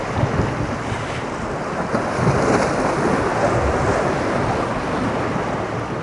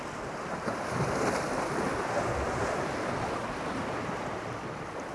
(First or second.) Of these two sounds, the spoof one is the second